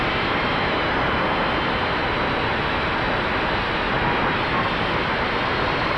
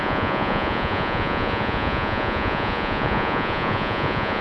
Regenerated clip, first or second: second